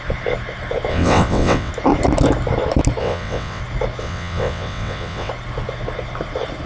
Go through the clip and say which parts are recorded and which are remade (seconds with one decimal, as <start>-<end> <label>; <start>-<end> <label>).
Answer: 0.0-0.9 recorded; 0.9-1.7 remade; 1.7-3.0 recorded; 3.0-3.6 remade; 3.6-4.0 recorded; 4.0-5.3 remade; 5.3-6.7 recorded